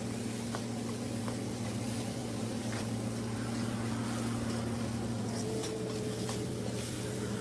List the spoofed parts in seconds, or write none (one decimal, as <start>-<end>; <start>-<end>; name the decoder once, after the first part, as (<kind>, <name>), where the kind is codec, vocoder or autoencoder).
2.2-2.8 (vocoder, BigVGAN v2)